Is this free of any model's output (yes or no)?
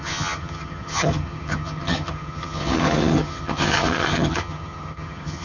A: no